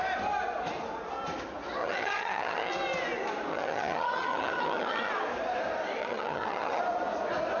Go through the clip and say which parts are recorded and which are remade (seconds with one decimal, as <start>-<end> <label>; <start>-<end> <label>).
0.0-1.8 recorded; 1.8-2.7 remade; 2.7-3.5 recorded; 3.5-5.1 remade; 5.1-6.0 recorded; 6.0-6.8 remade; 6.8-7.6 recorded